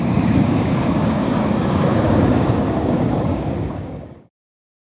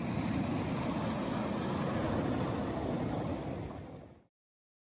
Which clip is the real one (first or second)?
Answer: second